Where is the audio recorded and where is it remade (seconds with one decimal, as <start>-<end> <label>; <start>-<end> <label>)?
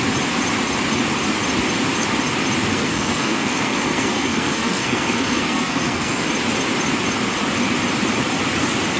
0.0-2.7 recorded; 2.7-6.3 remade; 6.3-9.0 recorded